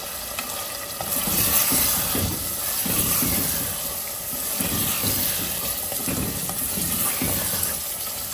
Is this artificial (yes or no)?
no